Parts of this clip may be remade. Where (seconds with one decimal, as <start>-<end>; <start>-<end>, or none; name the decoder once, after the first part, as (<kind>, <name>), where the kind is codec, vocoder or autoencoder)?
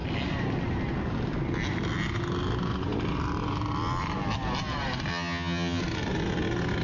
5.1-5.8 (vocoder, HiFi-GAN)